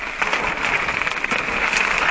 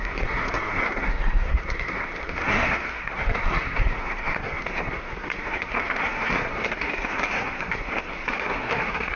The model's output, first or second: second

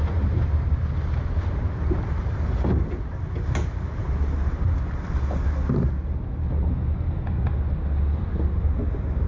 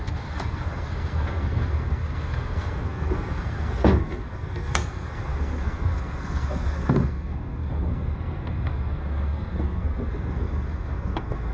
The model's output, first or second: second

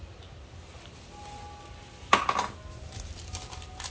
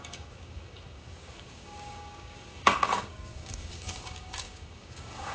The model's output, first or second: second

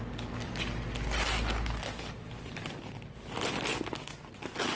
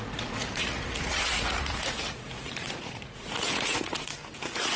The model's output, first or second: second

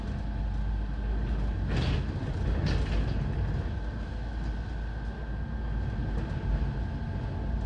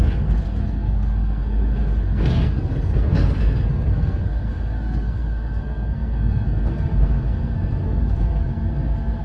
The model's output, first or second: second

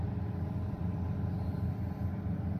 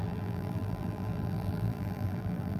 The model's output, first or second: second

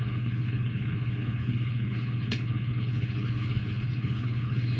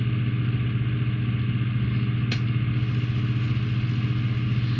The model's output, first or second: first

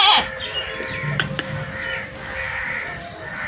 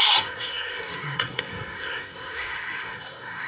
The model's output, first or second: second